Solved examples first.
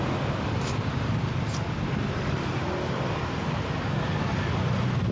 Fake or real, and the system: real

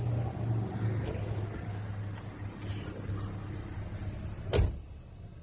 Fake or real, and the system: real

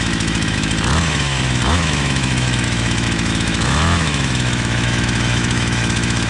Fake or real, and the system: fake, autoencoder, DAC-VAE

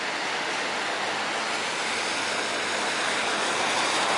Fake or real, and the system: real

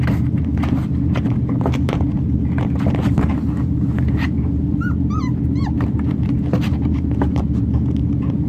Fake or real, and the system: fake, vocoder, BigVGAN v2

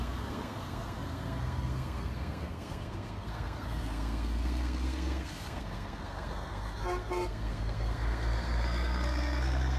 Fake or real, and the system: fake, codec, SNAC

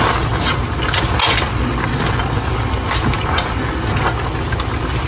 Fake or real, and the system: real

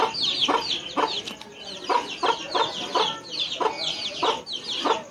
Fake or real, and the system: real